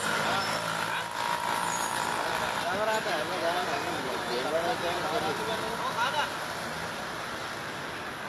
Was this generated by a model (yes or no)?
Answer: no